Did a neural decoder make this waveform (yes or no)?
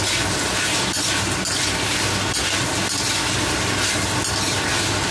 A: no